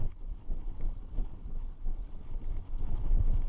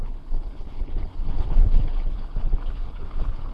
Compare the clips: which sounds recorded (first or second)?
first